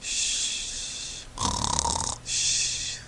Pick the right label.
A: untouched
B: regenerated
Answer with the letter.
B